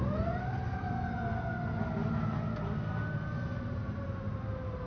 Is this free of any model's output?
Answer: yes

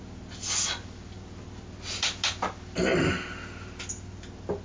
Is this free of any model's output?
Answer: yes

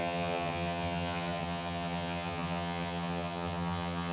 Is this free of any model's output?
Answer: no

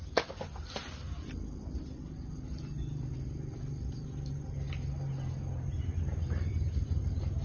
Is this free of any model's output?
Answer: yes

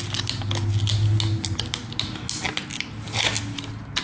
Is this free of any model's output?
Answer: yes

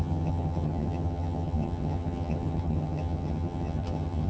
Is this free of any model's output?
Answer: no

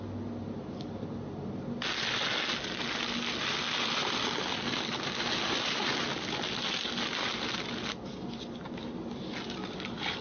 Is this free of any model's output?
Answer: yes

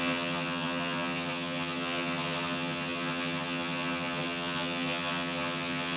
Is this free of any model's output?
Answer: no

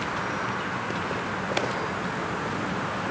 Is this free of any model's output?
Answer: yes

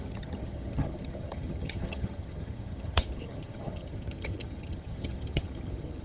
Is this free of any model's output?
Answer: no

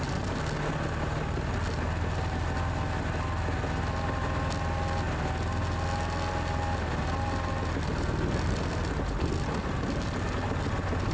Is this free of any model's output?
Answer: yes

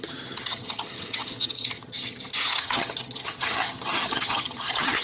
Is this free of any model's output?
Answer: no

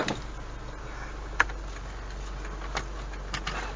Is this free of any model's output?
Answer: yes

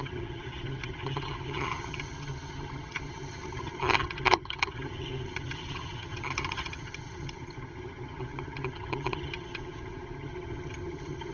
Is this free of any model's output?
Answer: no